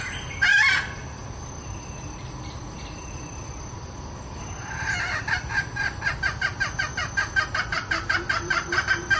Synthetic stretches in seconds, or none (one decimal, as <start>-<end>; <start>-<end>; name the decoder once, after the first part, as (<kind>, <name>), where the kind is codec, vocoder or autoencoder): none